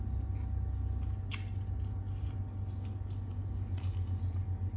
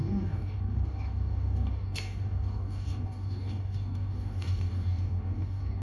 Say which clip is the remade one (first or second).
second